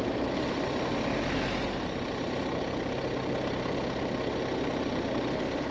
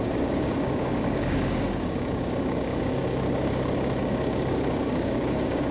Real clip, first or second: first